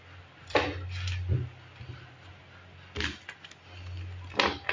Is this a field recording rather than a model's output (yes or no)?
yes